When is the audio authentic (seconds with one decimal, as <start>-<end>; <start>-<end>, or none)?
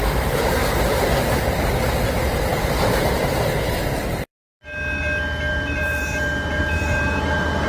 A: 0.6-2.1; 4.3-5.5